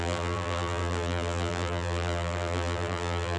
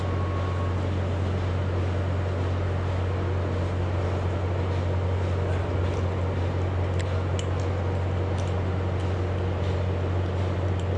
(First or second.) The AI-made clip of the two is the first